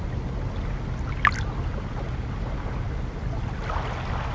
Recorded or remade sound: recorded